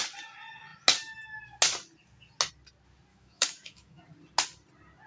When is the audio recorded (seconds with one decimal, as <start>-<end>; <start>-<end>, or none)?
0.0-3.1; 4.0-5.1